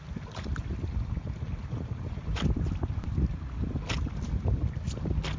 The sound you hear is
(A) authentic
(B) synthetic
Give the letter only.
A